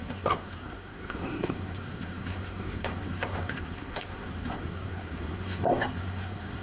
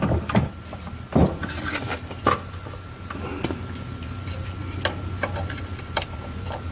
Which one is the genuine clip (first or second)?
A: second